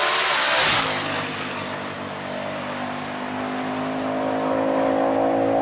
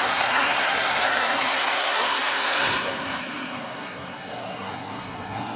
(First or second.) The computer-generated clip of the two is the second